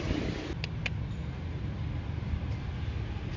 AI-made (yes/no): no